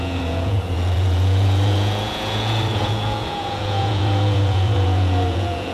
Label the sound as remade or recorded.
remade